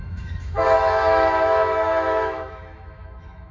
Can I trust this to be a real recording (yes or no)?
no